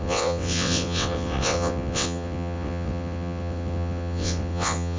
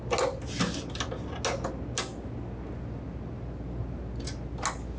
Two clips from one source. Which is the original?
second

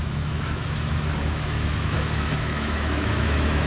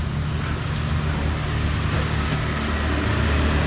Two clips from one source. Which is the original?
second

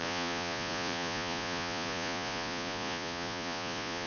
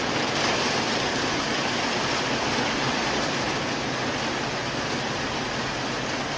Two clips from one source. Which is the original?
second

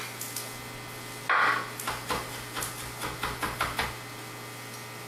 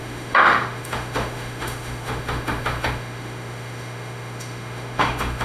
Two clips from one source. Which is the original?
first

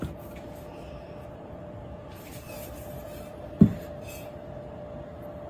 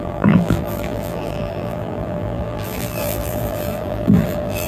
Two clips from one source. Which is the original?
first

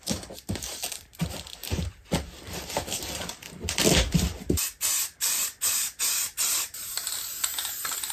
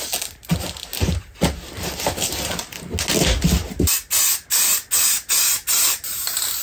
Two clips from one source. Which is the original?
second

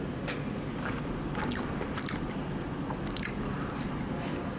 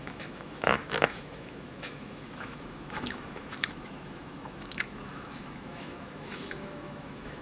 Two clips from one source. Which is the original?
first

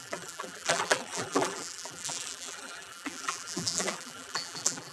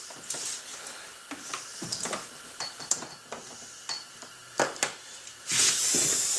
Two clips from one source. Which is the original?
second